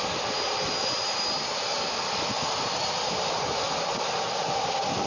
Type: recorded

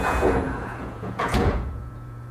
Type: remade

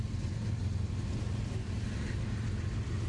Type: recorded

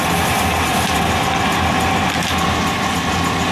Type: recorded